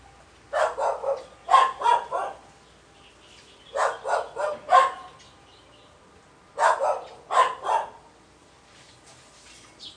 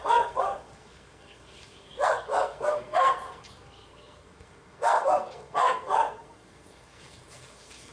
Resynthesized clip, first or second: second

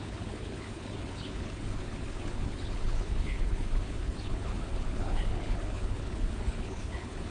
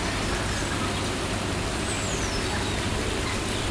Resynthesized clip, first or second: first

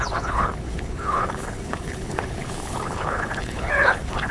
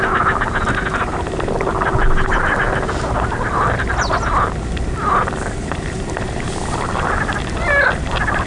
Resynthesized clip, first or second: first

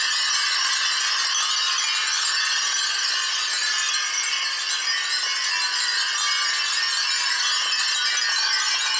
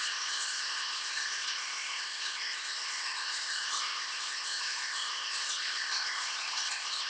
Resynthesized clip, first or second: second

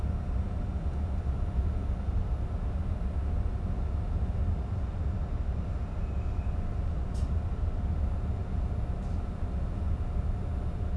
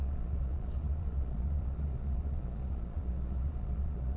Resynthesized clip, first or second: second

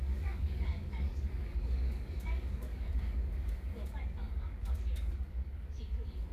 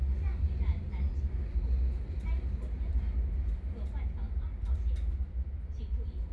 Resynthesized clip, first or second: first